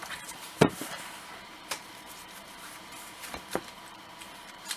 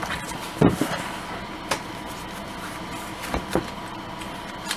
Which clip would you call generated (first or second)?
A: first